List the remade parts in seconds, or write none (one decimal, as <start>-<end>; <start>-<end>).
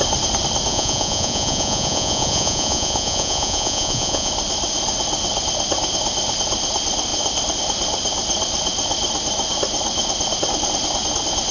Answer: 0.7-4.3